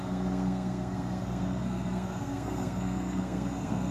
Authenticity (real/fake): fake